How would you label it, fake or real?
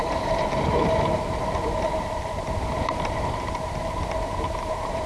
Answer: fake